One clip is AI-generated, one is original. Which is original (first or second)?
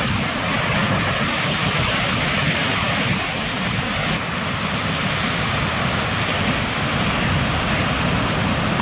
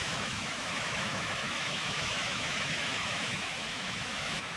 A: first